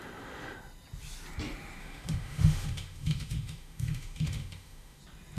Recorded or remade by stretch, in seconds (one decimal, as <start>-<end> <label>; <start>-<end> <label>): 0.0-1.8 recorded; 1.8-5.0 remade; 5.0-5.4 recorded